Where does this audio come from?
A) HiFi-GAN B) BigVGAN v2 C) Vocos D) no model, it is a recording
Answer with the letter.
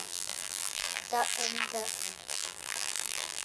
B